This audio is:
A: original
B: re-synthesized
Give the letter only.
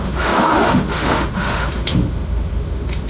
B